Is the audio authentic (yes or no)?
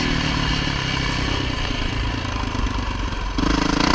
yes